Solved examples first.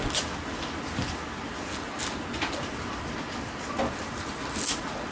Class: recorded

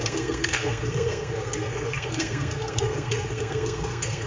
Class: remade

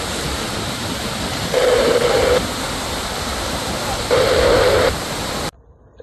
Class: remade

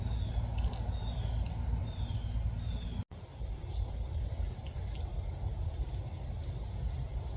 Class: recorded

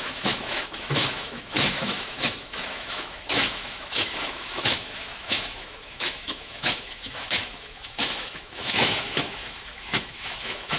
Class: remade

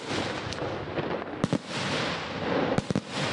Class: recorded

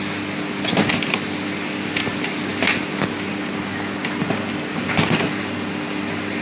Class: recorded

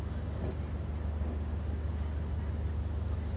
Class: recorded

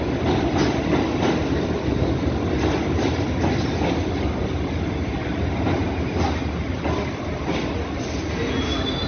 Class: recorded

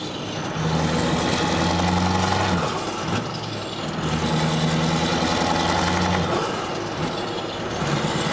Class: recorded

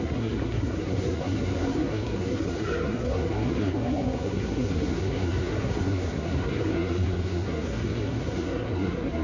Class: remade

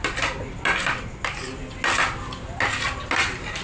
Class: recorded